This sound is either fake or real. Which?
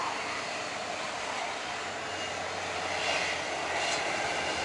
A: real